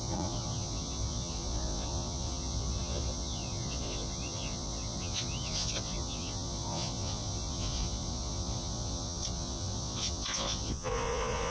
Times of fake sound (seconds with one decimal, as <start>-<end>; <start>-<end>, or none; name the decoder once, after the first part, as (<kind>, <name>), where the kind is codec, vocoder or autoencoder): 0.0-11.5 (vocoder, Vocos)